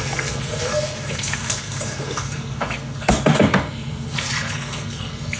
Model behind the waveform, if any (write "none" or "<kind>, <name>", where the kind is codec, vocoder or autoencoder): codec, SNAC